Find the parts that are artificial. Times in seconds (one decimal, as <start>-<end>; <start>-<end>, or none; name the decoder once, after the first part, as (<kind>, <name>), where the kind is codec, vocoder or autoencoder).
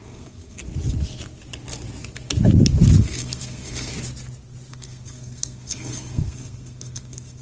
0.0-0.6 (codec, SNAC); 3.0-3.9; 4.7-7.4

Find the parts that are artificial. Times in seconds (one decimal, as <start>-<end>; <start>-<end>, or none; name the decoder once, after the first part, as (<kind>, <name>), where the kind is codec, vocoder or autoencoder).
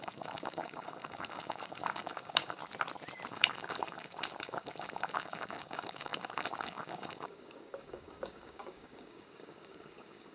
0.0-2.6 (codec, DAC); 3.3-10.3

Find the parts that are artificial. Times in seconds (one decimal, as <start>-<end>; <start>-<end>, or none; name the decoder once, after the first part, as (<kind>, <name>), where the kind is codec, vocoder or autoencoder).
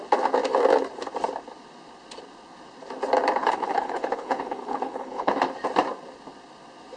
3.4-5.3 (codec, HILCodec)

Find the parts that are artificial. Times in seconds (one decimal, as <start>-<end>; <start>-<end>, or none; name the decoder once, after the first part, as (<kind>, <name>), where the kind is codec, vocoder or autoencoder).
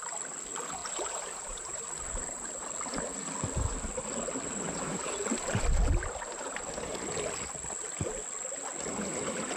0.8-1.8 (vocoder, BigVGAN v2)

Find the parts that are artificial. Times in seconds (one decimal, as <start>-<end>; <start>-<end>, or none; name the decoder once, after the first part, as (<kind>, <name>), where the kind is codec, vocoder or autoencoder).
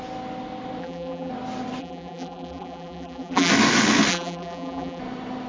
0.8-1.3 (vocoder, BigVGAN v2); 1.8-3.5; 4.1-5.0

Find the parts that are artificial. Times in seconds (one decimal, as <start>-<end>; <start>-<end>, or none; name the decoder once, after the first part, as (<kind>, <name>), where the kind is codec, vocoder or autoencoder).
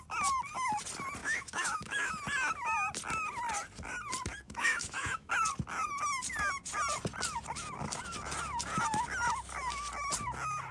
1.2-2.1 (autoencoder, DAC-VAE); 4.3-5.3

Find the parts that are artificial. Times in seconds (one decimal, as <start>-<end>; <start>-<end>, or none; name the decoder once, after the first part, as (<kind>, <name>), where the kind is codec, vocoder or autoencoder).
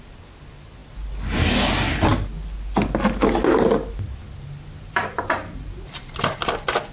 none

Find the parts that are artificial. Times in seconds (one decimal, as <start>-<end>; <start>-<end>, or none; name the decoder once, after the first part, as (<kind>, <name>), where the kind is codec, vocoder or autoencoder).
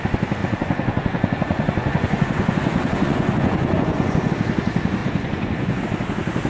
0.4-4.3 (vocoder, Vocos); 5.0-5.8